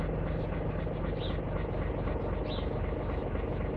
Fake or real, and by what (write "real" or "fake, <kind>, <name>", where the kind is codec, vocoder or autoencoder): real